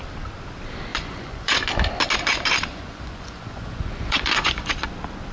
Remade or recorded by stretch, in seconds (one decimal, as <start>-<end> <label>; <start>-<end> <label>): 0.0-0.9 recorded; 0.9-1.6 remade; 1.6-2.7 recorded; 2.7-4.7 remade; 4.7-5.3 recorded